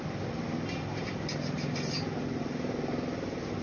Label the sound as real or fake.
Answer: real